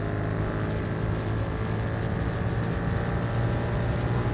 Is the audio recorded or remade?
recorded